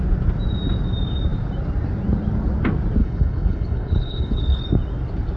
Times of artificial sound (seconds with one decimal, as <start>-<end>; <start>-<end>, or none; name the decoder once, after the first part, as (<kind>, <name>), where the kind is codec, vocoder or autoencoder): 3.0-4.6 (codec, HILCodec)